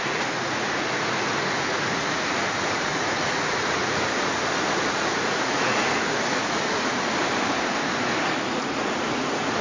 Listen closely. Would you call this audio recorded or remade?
remade